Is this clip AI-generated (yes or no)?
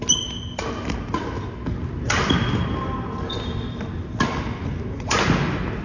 no